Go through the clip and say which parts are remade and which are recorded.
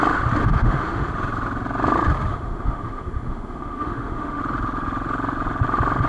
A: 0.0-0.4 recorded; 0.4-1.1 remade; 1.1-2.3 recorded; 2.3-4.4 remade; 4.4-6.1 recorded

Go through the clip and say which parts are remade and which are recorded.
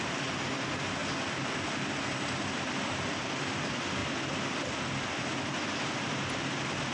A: 0.0-6.9 recorded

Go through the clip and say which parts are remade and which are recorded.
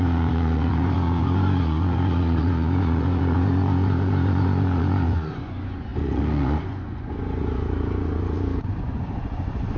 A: 0.0-9.8 remade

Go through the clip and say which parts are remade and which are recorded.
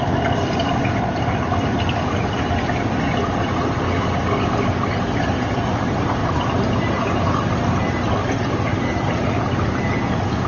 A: 0.0-10.5 recorded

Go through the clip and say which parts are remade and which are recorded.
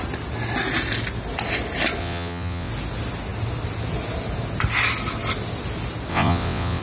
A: 0.0-2.0 recorded; 2.0-2.7 remade; 2.7-6.1 recorded; 6.1-6.8 remade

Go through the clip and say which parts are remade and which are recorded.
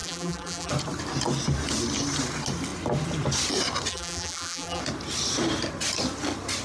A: 0.0-0.7 remade; 0.7-3.9 recorded; 3.9-4.8 remade; 4.8-6.6 recorded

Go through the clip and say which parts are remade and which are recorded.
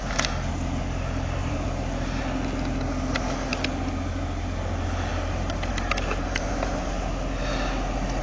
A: 0.0-1.4 recorded; 1.4-2.2 remade; 2.2-5.1 recorded; 5.1-6.9 remade; 6.9-8.2 recorded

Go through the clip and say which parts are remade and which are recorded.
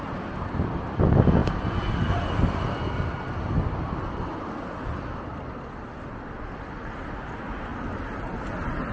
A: 0.0-1.4 recorded; 1.4-2.1 remade; 2.1-7.7 recorded; 7.7-8.3 remade; 8.3-8.9 recorded